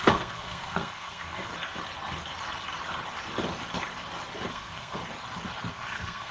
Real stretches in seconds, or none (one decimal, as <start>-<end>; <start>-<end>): 1.5-4.5; 5.0-5.7